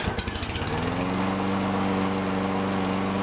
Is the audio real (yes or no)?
yes